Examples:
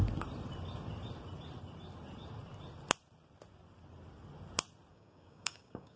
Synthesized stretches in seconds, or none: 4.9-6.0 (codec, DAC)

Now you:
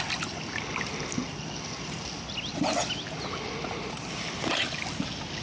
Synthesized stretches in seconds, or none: none

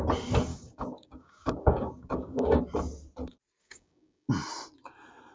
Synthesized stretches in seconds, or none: 0.5-2.6 (codec, DAC); 3.6-4.3

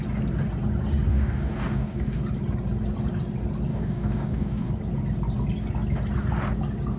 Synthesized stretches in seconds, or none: 1.1-2.2 (codec, DAC); 3.7-4.7

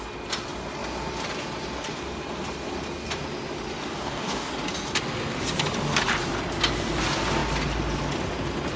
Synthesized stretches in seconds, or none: 3.9-4.5 (codec, DAC)

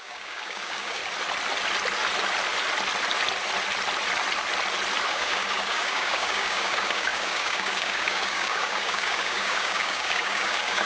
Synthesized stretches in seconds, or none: 0.0-1.0 (codec, DAC); 5.1-10.9

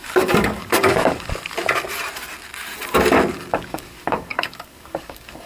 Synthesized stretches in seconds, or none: 0.0-1.3 (codec, DAC); 3.3-5.5

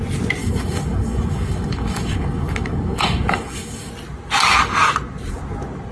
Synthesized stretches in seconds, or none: 0.4-3.9 (codec, DAC)